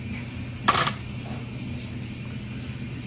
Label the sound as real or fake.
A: real